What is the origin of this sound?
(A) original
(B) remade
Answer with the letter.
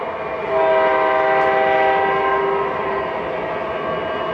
A